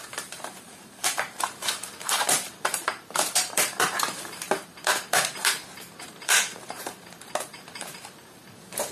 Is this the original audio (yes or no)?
no